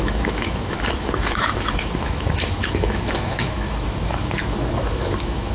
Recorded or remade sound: remade